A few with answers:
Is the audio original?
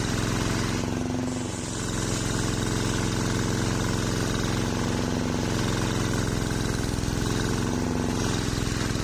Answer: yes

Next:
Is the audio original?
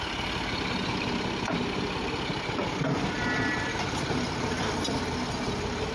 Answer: yes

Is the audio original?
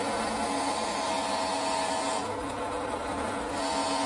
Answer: yes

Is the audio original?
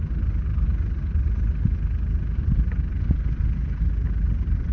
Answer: yes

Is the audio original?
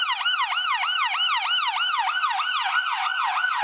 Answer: yes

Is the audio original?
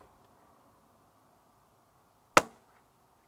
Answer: yes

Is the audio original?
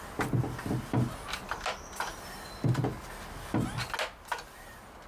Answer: yes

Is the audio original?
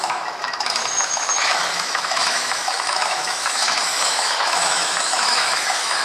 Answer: no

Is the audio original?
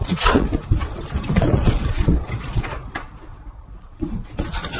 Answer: no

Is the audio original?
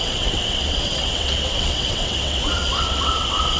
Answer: no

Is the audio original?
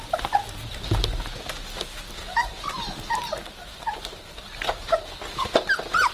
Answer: yes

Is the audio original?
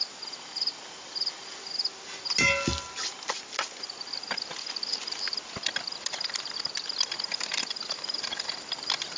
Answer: yes